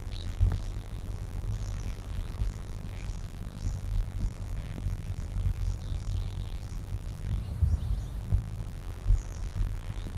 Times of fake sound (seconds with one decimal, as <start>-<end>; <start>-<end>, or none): 0.0-7.4; 8.2-10.2

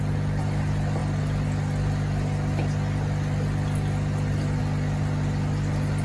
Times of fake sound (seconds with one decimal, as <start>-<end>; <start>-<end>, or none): none